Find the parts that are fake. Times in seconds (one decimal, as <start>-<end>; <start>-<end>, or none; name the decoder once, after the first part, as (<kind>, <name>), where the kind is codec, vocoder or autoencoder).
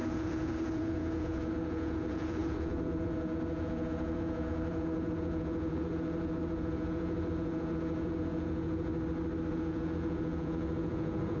0.0-8.9 (vocoder, Vocos); 9.5-11.4